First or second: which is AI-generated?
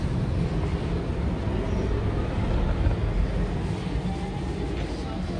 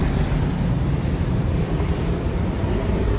second